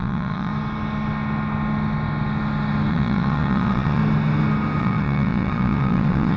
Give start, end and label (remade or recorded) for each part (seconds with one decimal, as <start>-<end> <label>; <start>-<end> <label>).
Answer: 0.0-0.5 remade; 0.5-2.9 recorded; 2.9-4.0 remade; 4.0-4.8 recorded; 4.8-6.4 remade